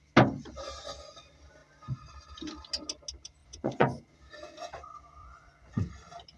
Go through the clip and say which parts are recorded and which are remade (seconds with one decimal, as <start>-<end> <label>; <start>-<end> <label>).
0.0-3.4 recorded; 3.4-4.0 remade; 4.0-5.2 recorded; 5.2-5.9 remade; 5.9-6.4 recorded